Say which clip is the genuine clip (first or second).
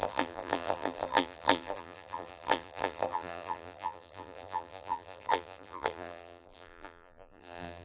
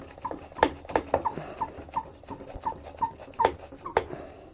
second